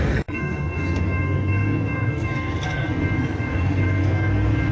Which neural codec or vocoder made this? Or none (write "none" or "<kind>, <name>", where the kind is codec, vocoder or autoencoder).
codec, SNAC